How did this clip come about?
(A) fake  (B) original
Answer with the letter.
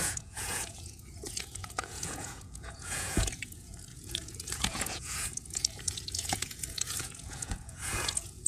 A